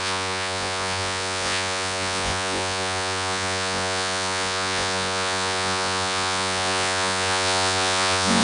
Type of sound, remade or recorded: remade